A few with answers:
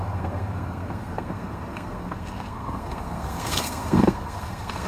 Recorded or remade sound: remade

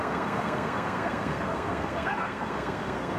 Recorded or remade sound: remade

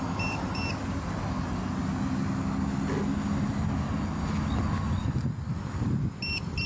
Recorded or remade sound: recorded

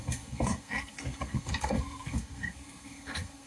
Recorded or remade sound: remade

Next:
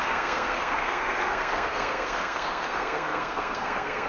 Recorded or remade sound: remade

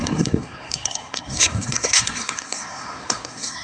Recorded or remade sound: remade